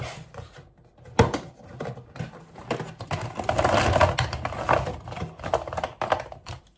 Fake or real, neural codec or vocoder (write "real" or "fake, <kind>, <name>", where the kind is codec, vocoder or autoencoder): real